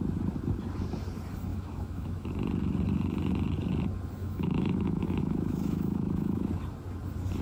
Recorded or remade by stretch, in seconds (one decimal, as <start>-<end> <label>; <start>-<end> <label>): 0.0-1.5 recorded; 1.5-2.3 remade; 2.3-4.2 recorded; 4.2-6.5 remade; 6.5-7.4 recorded